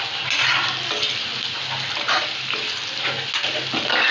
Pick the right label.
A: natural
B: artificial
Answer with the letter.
A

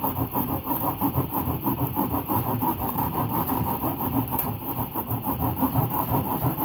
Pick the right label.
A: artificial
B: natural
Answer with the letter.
A